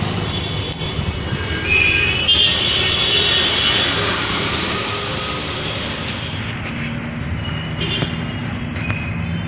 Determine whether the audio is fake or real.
real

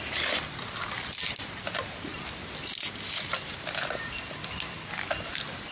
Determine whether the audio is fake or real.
real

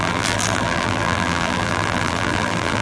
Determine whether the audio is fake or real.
fake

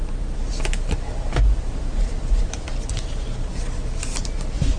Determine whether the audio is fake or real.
fake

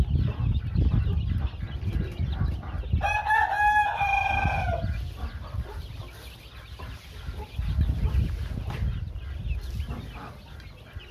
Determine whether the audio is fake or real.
real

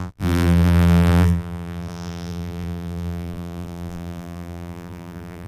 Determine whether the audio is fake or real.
fake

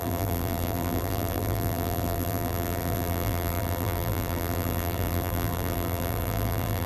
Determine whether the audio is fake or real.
fake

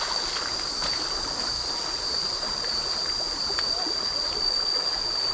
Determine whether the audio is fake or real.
real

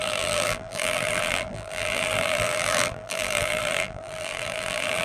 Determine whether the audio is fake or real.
fake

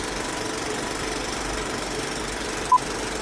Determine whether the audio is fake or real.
fake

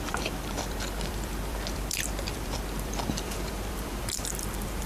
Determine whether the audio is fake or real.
fake